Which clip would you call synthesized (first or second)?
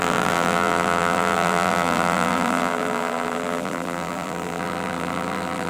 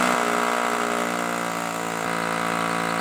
first